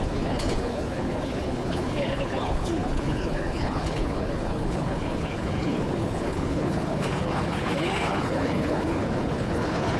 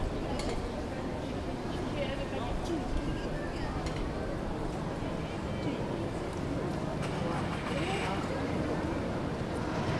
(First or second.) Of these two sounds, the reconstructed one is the first